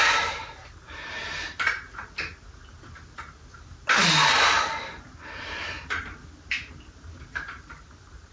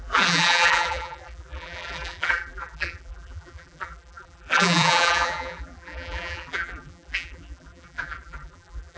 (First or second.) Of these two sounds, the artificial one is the second